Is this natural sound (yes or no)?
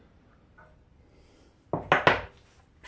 yes